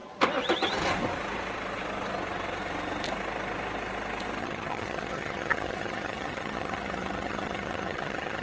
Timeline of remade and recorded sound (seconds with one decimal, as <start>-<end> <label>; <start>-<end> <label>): 0.0-4.4 recorded; 4.4-8.4 remade